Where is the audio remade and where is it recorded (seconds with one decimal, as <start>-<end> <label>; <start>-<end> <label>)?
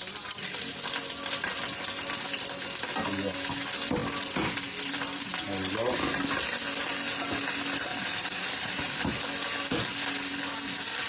0.0-7.9 recorded; 7.9-9.2 remade; 9.2-11.1 recorded